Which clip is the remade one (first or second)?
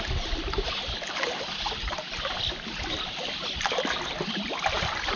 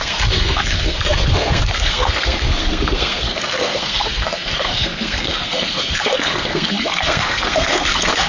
second